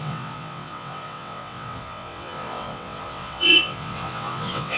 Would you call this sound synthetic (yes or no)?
yes